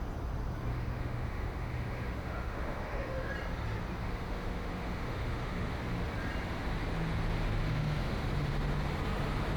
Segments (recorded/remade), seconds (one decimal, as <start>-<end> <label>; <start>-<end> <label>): 0.0-0.7 recorded; 0.7-3.3 remade; 3.3-4.0 recorded; 4.0-5.8 remade; 5.8-7.6 recorded; 7.6-8.1 remade; 8.1-9.6 recorded